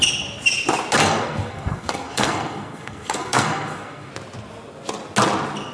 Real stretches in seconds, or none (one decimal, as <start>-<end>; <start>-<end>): 0.0-1.0; 4.1-5.7